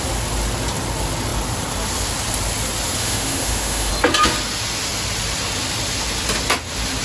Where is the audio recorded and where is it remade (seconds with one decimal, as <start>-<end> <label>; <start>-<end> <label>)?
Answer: 0.0-3.0 recorded; 3.0-3.9 remade; 3.9-7.0 recorded